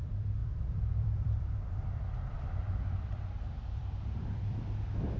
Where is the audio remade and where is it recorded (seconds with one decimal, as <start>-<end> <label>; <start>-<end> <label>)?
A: 0.0-5.2 remade